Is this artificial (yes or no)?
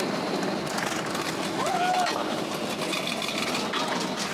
no